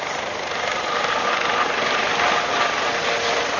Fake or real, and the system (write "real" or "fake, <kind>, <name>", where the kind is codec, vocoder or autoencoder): real